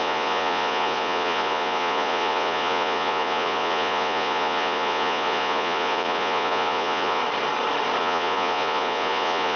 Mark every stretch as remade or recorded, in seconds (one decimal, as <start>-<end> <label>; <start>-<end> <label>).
0.0-7.2 remade; 7.2-8.0 recorded; 8.0-9.6 remade